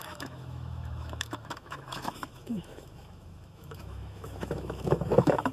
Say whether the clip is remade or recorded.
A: remade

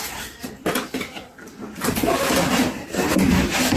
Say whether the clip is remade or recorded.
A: recorded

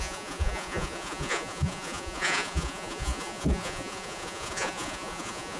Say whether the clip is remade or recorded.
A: remade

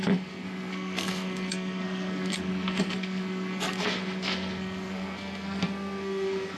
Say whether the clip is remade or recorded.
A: remade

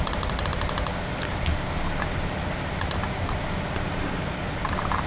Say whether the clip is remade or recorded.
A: recorded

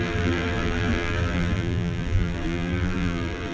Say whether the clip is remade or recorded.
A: remade